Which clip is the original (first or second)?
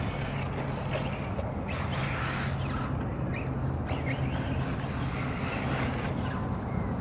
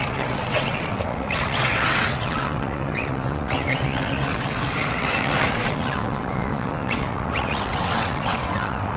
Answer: first